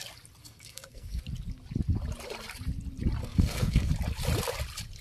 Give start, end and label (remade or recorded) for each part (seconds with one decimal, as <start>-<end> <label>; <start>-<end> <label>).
0.0-0.4 recorded; 0.4-1.2 remade; 1.2-3.2 recorded; 3.2-3.9 remade; 3.9-5.0 recorded